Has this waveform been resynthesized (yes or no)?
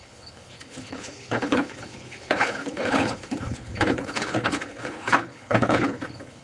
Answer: yes